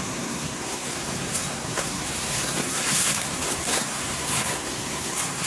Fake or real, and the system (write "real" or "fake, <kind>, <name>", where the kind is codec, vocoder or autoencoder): fake, codec, SNAC